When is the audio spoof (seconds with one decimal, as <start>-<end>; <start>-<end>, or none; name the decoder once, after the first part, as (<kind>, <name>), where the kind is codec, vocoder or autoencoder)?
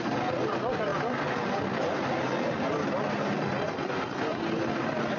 none